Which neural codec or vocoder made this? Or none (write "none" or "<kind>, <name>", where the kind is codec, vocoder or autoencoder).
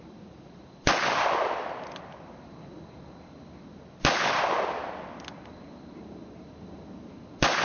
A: none